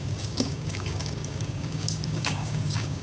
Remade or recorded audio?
remade